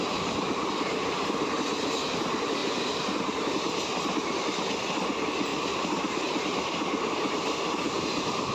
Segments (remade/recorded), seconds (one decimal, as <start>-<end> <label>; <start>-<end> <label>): 0.0-2.6 recorded; 2.6-3.5 remade; 3.5-5.5 recorded; 5.5-6.6 remade; 6.6-8.5 recorded